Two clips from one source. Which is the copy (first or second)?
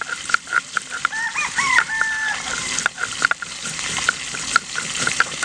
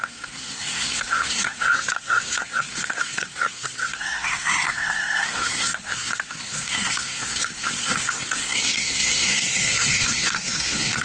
second